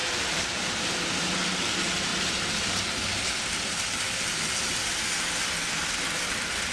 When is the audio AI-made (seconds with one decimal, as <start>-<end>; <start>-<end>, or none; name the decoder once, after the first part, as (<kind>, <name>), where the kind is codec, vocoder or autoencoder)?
0.0-0.8 (vocoder, BigVGAN v2)

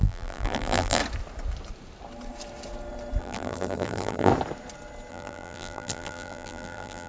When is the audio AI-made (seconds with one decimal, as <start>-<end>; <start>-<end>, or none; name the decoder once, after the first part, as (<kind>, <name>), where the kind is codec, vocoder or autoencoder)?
0.0-1.0 (vocoder, BigVGAN v2); 3.2-4.3; 5.1-7.1

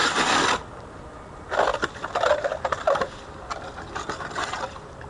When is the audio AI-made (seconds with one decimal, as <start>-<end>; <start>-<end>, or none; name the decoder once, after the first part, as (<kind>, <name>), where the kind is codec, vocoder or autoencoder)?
0.0-0.9 (vocoder, BigVGAN v2); 1.7-5.1

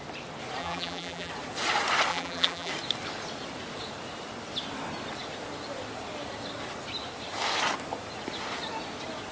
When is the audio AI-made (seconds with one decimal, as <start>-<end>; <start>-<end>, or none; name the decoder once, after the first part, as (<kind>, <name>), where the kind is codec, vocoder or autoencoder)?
0.6-1.3 (vocoder, BigVGAN v2); 2.1-2.7

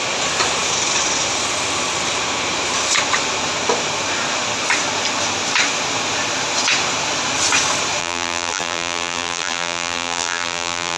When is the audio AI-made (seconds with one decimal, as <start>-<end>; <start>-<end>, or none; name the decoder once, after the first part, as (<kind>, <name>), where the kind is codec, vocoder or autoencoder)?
8.0-11.0 (vocoder, BigVGAN v2)

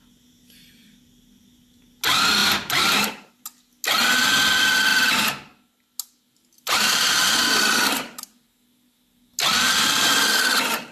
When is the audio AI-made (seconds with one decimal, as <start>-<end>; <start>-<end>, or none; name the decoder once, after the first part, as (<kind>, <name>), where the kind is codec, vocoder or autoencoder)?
2.4-3.3 (vocoder, BigVGAN v2)